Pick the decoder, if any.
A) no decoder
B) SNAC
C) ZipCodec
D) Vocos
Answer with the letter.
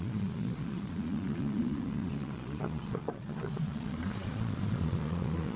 D